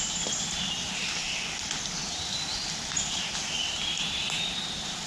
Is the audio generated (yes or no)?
no